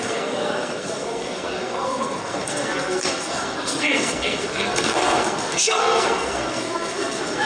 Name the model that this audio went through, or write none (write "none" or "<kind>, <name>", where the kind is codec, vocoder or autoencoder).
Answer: codec, SNAC